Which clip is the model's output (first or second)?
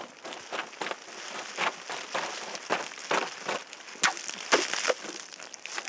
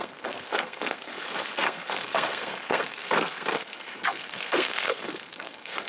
second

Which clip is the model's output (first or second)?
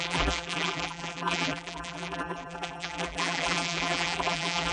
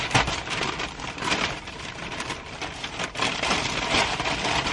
first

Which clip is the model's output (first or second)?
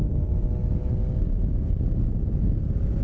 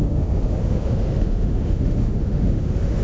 second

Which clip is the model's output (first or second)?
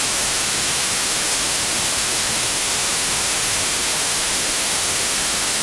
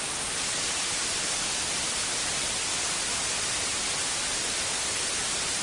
first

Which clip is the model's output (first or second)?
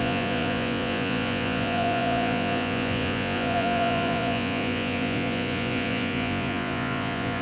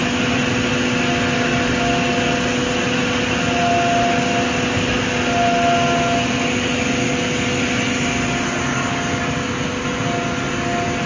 first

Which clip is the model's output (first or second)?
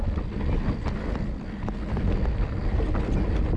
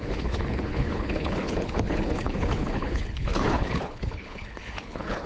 second